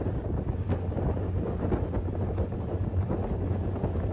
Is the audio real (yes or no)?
yes